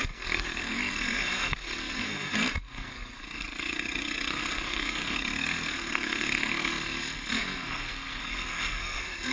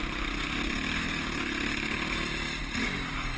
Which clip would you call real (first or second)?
second